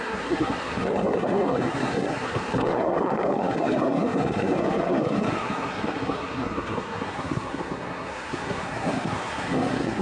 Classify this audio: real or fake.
fake